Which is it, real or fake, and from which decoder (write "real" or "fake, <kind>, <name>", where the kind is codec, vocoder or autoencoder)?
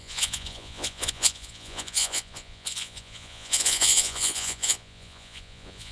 fake, vocoder, Vocos